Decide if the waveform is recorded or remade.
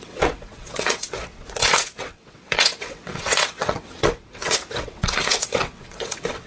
remade